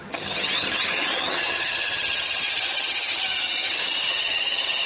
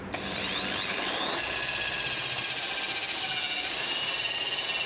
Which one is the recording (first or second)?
second